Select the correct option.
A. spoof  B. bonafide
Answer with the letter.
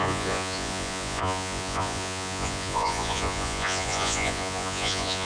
A